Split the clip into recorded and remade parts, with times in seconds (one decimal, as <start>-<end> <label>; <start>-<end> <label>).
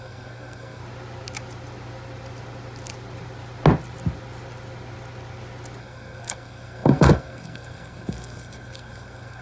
0.0-0.8 remade; 0.8-5.8 recorded; 5.8-9.4 remade